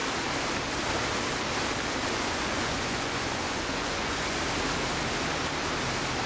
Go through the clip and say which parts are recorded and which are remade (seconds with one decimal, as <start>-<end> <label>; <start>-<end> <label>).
0.0-2.1 recorded; 2.1-4.4 remade; 4.4-6.3 recorded